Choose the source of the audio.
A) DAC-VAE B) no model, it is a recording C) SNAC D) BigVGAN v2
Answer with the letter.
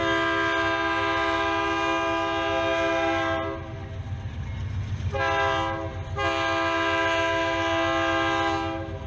B